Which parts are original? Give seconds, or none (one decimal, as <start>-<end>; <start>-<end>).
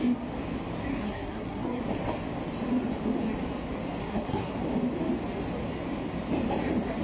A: 0.0-0.9; 1.8-4.0; 4.6-7.0